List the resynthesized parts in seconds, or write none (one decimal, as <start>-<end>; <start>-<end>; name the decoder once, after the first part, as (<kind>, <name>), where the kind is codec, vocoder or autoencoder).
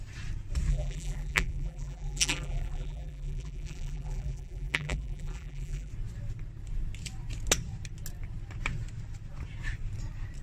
0.7-5.9 (vocoder, BigVGAN v2)